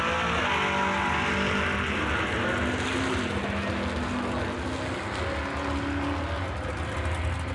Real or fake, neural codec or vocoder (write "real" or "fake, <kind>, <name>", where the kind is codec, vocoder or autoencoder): real